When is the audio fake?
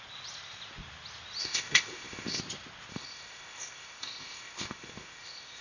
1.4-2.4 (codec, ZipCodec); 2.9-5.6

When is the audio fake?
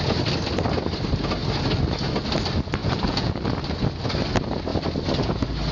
2.8-3.4 (vocoder, Vocos)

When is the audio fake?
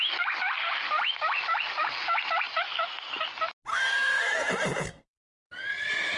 3.7-4.5 (codec, SNAC)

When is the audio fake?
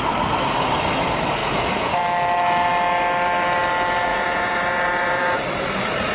1.4-2.0 (vocoder, Vocos); 4.1-5.4